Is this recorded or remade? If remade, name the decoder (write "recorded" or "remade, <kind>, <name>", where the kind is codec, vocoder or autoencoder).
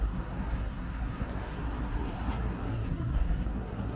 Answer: remade, codec, SNAC